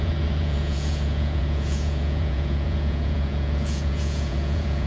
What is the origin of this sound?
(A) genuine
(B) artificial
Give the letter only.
B